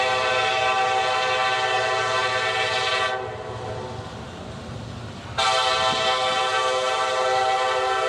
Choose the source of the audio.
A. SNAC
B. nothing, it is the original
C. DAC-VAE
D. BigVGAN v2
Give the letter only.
B